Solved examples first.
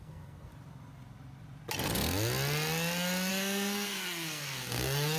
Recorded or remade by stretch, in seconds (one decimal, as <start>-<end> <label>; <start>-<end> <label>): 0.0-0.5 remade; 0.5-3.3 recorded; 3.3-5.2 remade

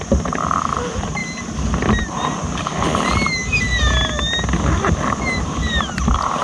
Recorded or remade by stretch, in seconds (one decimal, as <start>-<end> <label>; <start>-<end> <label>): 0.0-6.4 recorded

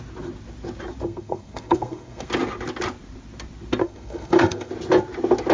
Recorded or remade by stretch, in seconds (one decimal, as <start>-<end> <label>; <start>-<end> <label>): 0.0-1.0 recorded; 1.0-2.3 remade; 2.3-3.8 recorded; 3.8-4.7 remade; 4.7-5.5 recorded